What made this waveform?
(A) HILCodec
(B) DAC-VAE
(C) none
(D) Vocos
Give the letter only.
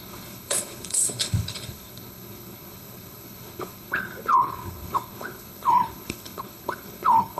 A